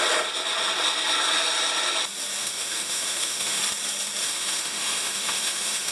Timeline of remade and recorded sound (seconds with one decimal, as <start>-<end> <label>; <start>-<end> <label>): 0.0-2.4 recorded; 2.4-3.6 remade; 3.6-4.2 recorded; 4.2-5.9 remade